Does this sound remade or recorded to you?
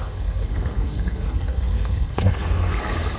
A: remade